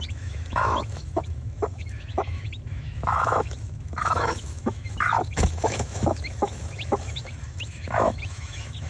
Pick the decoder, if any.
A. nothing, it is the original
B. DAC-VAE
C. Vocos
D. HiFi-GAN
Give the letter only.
B